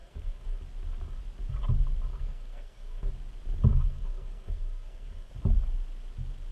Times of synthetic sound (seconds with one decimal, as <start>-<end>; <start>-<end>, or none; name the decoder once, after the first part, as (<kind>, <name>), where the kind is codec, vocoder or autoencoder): 0.0-0.6 (codec, SNAC); 2.1-3.1; 3.7-5.3